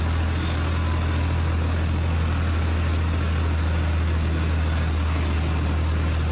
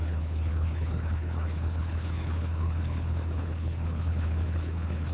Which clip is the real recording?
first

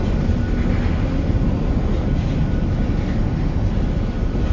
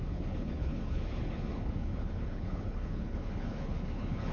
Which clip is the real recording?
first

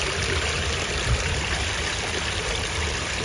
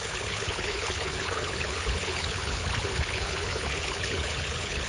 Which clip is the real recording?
first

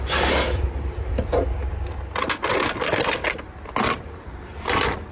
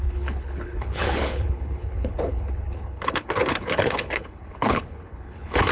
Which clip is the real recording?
first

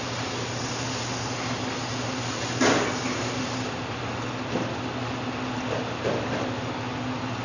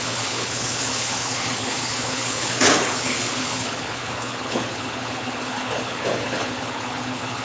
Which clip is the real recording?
first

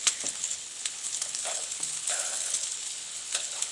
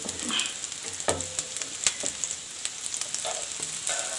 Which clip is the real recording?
second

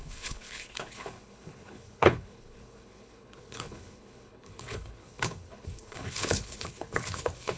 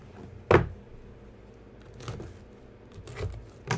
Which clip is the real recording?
second